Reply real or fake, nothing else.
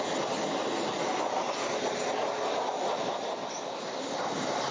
real